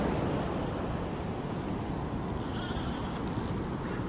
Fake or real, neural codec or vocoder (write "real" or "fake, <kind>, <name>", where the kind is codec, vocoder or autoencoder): real